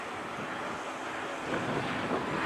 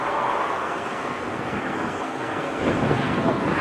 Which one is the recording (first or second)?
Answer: first